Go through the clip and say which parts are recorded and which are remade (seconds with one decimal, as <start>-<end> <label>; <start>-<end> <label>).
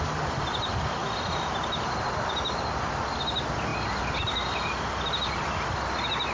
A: 0.0-6.3 recorded